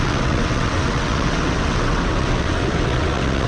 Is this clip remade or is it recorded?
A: remade